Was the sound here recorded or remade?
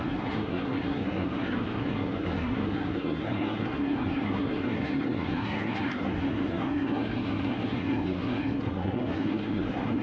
remade